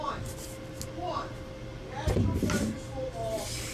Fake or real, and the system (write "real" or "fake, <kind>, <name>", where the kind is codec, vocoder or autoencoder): real